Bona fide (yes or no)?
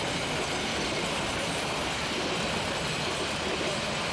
yes